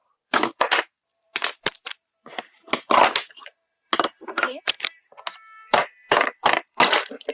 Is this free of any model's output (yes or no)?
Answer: no